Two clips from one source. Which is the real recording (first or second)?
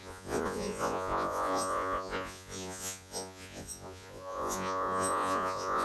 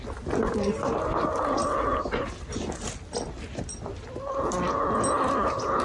second